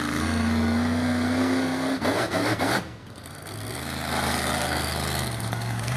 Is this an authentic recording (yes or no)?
no